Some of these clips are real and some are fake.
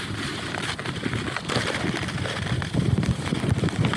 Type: real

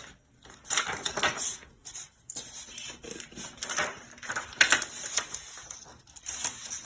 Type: real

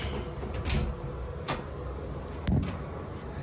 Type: real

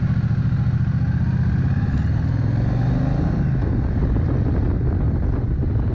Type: real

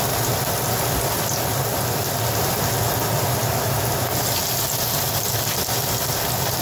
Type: real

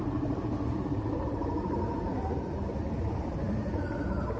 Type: real